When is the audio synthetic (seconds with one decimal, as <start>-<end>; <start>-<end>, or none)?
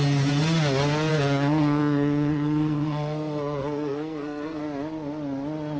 1.1-4.6